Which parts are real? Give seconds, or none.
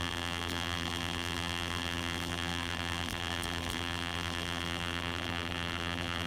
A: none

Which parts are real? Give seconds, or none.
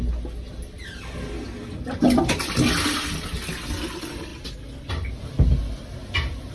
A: 0.0-6.5